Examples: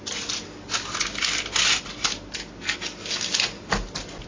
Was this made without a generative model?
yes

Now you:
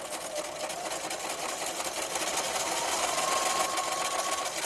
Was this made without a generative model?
yes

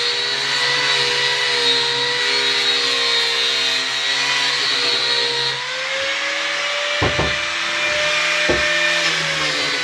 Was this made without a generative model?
yes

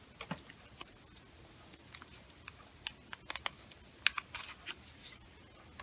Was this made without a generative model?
yes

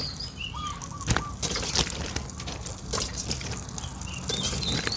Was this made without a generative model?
yes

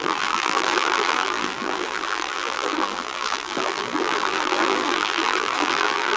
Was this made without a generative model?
no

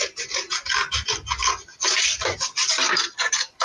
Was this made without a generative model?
yes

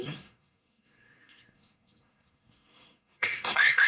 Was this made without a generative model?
no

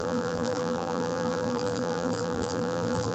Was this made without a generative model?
no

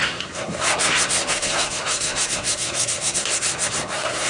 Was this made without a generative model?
no